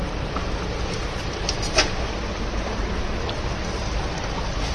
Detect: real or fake real